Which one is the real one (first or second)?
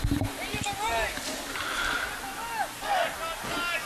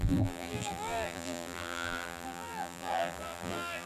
first